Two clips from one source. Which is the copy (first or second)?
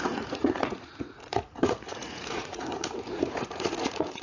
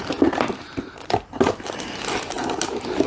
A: first